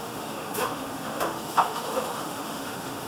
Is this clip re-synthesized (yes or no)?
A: yes